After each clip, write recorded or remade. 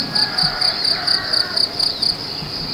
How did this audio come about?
recorded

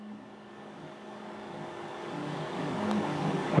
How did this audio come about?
remade